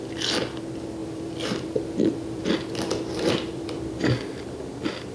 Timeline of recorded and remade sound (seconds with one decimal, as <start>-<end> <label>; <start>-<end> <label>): 0.0-1.0 recorded; 1.0-4.1 remade; 4.1-5.1 recorded